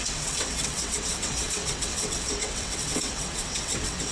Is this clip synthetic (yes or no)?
yes